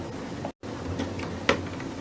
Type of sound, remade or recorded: recorded